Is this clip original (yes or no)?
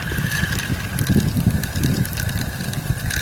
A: yes